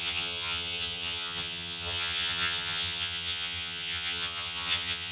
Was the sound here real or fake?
fake